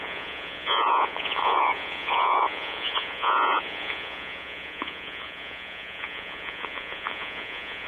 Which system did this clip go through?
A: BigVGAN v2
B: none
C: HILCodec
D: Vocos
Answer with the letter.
D